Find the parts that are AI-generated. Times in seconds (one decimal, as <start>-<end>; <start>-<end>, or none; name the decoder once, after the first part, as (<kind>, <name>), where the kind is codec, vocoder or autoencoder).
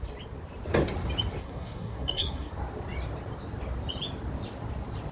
1.4-2.5 (codec, SNAC)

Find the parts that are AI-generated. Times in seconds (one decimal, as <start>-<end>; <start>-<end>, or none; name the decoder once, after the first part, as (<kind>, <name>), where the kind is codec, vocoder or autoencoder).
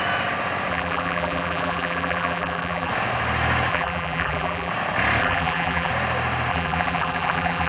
0.7-2.9 (vocoder, BigVGAN v2); 3.7-4.7; 5.2-5.9; 6.5-7.7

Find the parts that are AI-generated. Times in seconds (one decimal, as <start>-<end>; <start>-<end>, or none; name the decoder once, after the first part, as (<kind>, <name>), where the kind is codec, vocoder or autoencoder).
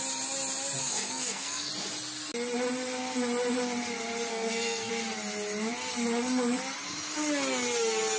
0.8-1.7 (codec, SNAC); 4.3-4.9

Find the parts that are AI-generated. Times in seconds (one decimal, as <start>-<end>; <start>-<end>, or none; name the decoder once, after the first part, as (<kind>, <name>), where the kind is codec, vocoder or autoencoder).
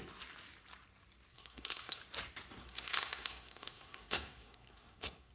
1.3-2.0 (codec, SNAC); 2.6-5.3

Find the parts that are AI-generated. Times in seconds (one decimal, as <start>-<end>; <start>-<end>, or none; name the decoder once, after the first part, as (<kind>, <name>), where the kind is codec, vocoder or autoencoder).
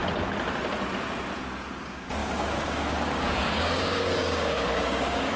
1.8-5.4 (codec, DAC)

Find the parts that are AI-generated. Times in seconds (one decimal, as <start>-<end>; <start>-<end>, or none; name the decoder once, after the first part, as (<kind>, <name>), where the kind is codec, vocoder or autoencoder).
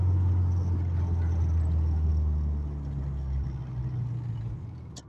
none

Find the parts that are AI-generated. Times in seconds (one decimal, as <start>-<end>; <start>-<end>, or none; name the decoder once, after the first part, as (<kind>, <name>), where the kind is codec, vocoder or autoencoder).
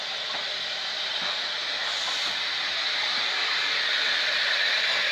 none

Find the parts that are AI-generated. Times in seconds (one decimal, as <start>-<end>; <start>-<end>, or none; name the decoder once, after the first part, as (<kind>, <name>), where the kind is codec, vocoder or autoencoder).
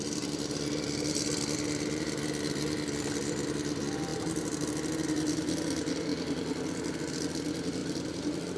6.1-7.2 (vocoder, BigVGAN v2); 7.8-8.6